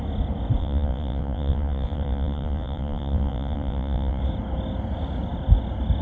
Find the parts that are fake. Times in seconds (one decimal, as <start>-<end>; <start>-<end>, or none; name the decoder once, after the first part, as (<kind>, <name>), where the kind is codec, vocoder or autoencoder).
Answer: 0.6-4.2 (vocoder, WaveNeXt)